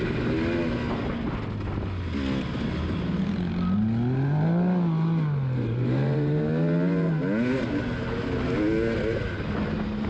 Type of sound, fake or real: real